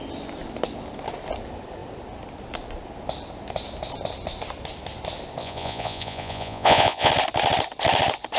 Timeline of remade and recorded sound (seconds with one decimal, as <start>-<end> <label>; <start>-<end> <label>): 0.0-5.4 recorded; 5.4-7.1 remade; 7.1-8.4 recorded